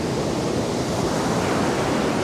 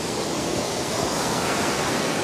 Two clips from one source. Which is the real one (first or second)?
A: first